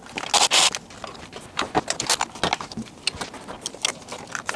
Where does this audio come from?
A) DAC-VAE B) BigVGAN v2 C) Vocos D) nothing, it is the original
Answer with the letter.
D